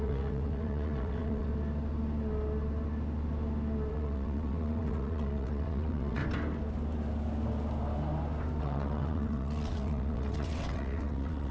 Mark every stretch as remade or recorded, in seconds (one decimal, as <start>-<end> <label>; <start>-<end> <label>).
0.0-1.5 remade; 1.5-3.9 recorded; 3.9-6.2 remade; 6.2-8.6 recorded; 8.6-11.5 remade